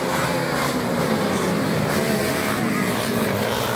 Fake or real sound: fake